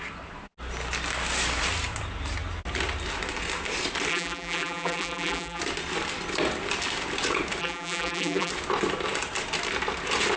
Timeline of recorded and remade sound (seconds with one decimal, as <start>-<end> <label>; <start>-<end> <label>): 0.0-4.1 recorded; 4.1-5.6 remade; 5.6-7.6 recorded; 7.6-8.5 remade; 8.5-10.4 recorded